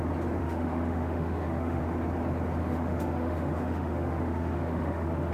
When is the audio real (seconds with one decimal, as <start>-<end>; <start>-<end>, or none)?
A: 0.0-0.4; 1.8-2.6